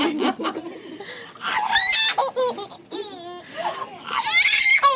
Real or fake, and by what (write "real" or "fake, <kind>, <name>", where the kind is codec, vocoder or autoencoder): real